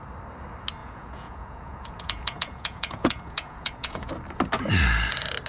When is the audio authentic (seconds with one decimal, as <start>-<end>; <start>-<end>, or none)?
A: 0.0-0.8; 4.1-5.5